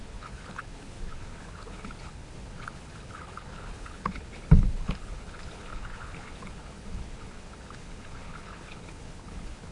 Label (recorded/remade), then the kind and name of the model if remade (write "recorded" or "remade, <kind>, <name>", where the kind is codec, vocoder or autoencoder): remade, codec, HILCodec